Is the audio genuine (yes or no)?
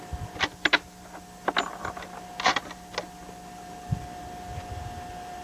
yes